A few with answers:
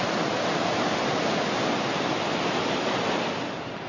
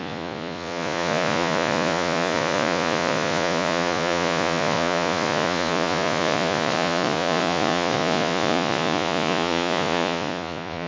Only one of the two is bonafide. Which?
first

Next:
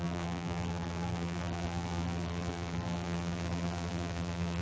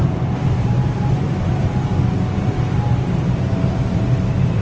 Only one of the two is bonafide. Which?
second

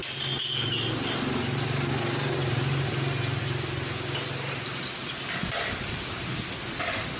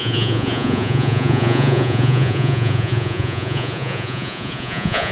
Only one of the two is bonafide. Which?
first